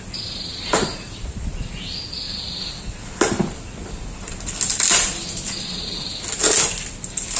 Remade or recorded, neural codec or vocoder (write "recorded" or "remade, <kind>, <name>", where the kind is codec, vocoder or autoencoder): recorded